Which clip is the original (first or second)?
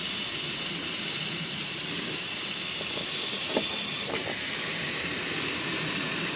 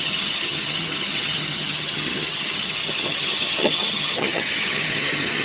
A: first